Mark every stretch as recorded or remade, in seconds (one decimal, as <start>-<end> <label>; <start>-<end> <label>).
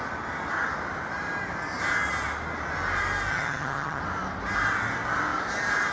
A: 0.0-3.3 recorded; 3.3-4.0 remade; 4.0-5.9 recorded